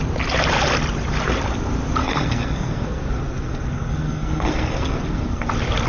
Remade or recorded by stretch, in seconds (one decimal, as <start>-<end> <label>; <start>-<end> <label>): 0.0-2.0 recorded; 2.0-5.5 remade; 5.5-5.9 recorded